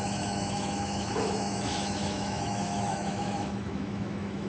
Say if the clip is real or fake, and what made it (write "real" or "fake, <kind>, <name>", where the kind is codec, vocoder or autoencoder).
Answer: fake, autoencoder, DAC-VAE